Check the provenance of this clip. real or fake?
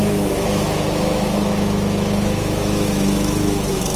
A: fake